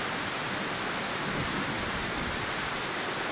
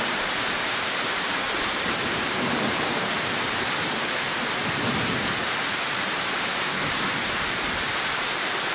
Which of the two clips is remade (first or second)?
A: second